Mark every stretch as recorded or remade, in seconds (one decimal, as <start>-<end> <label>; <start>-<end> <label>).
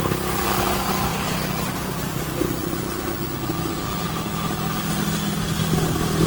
0.0-6.3 recorded